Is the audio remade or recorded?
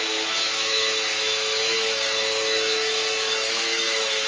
remade